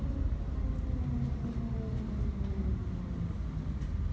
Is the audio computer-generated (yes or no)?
no